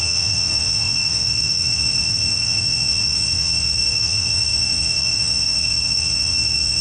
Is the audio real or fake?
fake